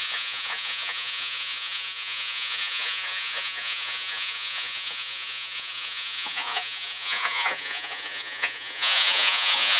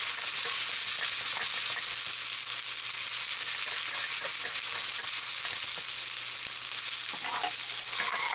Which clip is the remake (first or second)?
first